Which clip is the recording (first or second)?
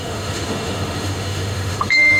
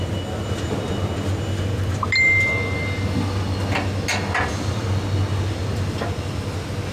second